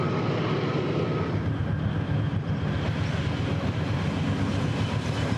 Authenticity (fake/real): real